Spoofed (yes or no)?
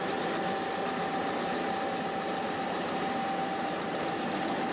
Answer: no